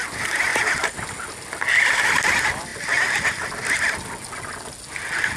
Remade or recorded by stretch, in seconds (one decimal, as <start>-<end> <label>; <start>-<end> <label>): 0.0-5.4 recorded